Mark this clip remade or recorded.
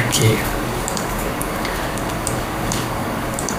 remade